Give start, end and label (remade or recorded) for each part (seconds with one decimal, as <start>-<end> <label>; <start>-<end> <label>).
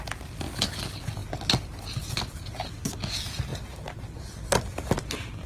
0.0-5.5 recorded